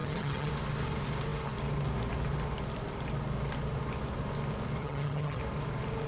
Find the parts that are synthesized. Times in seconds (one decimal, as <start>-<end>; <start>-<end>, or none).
0.0-0.5; 4.8-5.4